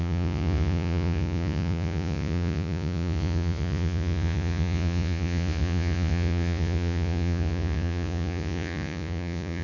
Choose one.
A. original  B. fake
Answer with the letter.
B